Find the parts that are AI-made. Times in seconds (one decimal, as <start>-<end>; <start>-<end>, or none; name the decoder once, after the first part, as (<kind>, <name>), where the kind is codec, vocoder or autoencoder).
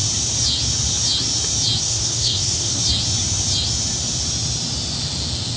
1.8-2.8 (codec, SNAC)